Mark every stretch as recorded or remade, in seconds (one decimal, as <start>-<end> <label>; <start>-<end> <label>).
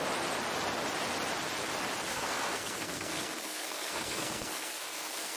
0.0-2.1 recorded; 2.1-5.4 remade